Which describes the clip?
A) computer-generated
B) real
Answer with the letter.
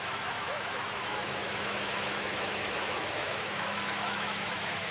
A